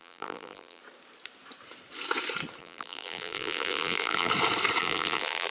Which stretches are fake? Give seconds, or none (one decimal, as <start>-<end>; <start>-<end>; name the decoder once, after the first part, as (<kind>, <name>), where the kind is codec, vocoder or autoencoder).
0.0-0.8 (vocoder, BigVGAN v2); 2.6-4.3; 4.8-5.5